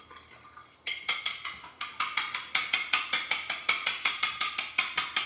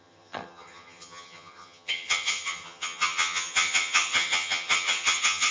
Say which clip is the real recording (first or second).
first